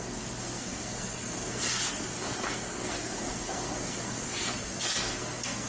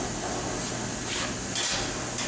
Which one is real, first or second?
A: second